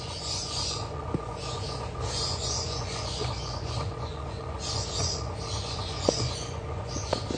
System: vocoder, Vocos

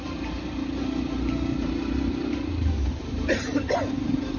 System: vocoder, BigVGAN v2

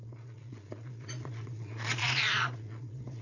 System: vocoder, Vocos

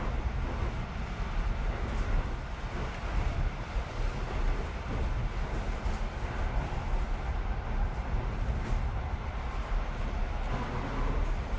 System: none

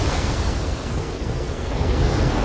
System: codec, SNAC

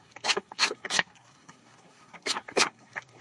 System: codec, SNAC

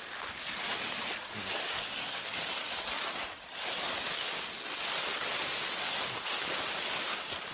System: none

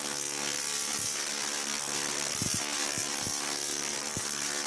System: none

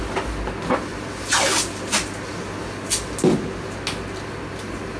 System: none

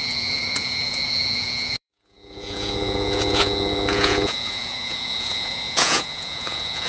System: vocoder, Vocos